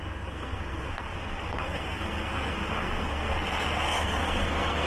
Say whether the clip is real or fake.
fake